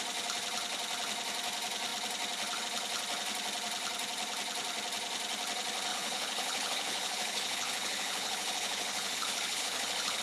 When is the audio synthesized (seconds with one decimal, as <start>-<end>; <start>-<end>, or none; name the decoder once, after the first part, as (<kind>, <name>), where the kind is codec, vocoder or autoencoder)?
5.9-10.2 (codec, HILCodec)